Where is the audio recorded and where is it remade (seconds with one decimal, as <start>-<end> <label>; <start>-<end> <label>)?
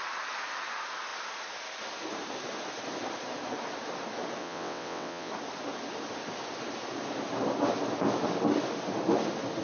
0.0-4.4 recorded; 4.4-5.3 remade; 5.3-9.6 recorded